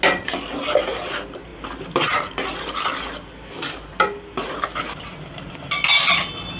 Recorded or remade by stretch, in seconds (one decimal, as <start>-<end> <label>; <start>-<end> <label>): 0.0-6.6 recorded